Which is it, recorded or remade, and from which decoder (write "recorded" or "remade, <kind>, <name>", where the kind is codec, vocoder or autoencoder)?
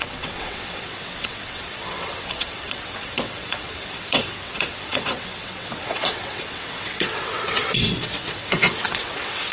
remade, vocoder, WaveNeXt